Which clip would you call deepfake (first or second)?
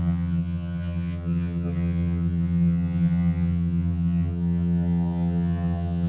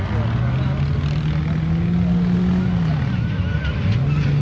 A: first